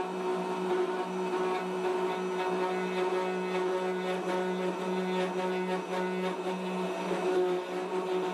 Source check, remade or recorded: recorded